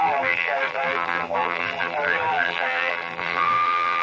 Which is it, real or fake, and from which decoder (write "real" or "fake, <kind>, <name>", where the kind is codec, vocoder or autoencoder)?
fake, vocoder, BigVGAN v2